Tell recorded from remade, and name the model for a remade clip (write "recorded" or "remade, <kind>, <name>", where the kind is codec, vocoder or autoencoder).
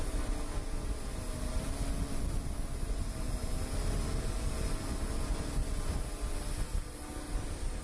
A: recorded